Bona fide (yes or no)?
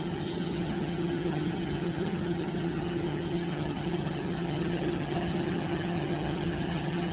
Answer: no